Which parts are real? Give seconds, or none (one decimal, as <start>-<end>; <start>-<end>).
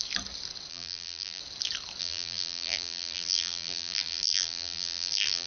0.0-0.7; 1.4-2.0